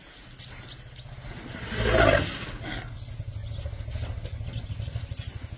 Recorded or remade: recorded